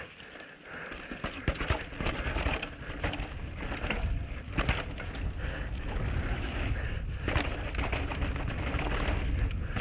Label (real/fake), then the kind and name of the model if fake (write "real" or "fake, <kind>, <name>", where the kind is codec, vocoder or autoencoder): real